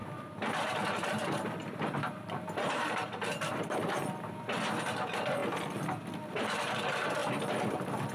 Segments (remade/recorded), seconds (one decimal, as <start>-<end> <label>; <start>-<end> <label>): 0.0-3.3 remade; 3.3-8.1 recorded